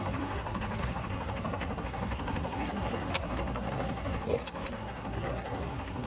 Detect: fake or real fake